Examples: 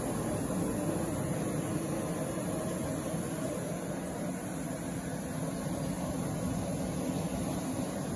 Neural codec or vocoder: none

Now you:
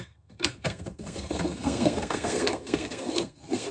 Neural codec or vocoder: codec, SNAC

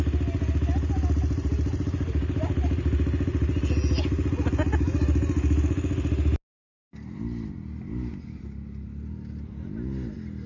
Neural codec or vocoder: none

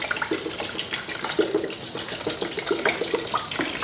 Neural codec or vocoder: none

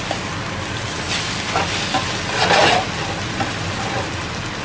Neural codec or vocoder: none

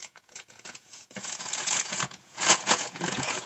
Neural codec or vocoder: vocoder, Vocos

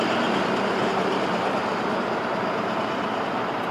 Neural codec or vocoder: vocoder, BigVGAN v2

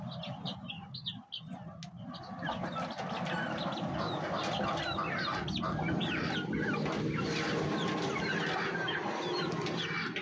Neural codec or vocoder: none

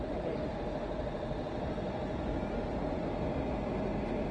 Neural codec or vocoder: vocoder, BigVGAN v2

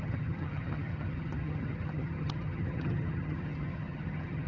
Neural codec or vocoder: vocoder, HiFi-GAN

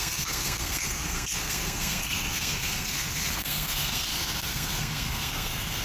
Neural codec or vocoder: codec, SNAC